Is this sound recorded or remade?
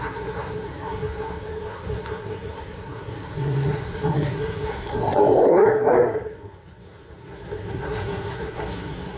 remade